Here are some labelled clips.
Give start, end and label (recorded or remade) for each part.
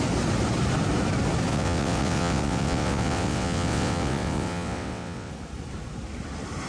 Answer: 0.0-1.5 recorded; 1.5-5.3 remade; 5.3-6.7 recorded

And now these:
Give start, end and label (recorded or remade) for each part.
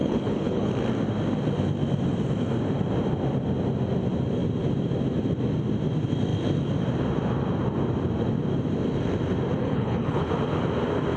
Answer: 0.0-0.7 remade; 0.7-9.6 recorded; 9.6-10.3 remade; 10.3-11.2 recorded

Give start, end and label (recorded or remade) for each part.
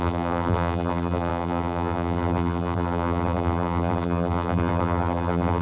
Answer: 0.0-5.6 remade